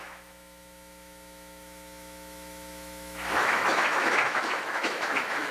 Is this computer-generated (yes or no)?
yes